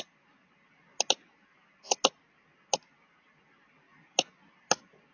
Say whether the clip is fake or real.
real